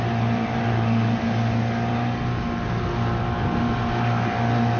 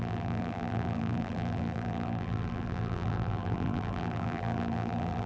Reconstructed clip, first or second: second